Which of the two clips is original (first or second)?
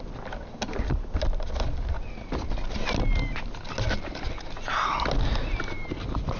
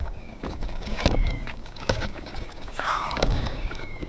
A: first